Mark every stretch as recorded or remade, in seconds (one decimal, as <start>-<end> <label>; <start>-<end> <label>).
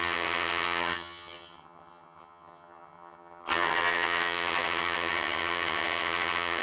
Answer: 0.0-6.6 remade